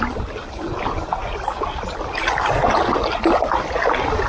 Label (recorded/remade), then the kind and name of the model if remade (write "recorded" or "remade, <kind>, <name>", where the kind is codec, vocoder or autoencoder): recorded